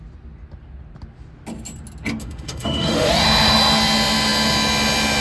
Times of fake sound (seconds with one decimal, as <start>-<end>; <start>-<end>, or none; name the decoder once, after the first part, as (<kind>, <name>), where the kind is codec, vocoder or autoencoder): 2.2-3.1 (autoencoder, DAC-VAE)